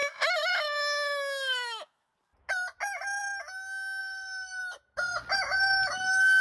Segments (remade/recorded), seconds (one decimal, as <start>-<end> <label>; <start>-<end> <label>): 0.0-2.1 remade; 2.1-4.0 recorded; 4.0-4.6 remade; 4.6-5.9 recorded; 5.9-6.4 remade